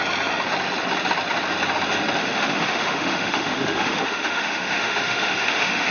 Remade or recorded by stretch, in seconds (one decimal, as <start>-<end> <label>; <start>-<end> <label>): 0.0-2.2 recorded; 2.2-5.9 remade